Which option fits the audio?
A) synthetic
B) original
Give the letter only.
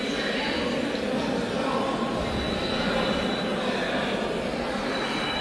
B